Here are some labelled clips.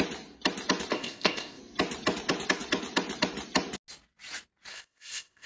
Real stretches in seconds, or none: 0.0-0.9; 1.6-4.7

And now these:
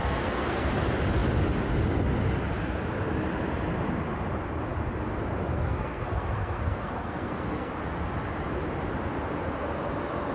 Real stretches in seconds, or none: 0.7-5.5; 7.7-10.3

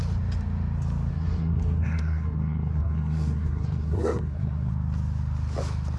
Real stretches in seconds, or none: 0.0-1.1; 4.7-6.0